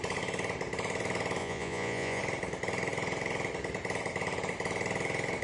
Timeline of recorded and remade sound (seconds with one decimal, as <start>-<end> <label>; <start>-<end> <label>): 0.0-1.4 recorded; 1.4-2.2 remade; 2.2-5.4 recorded